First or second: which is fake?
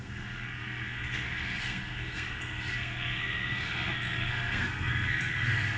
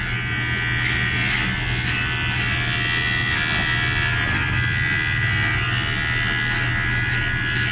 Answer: first